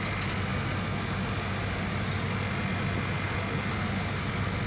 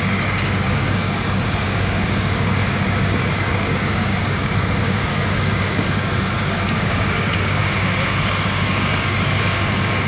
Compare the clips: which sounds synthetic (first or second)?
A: second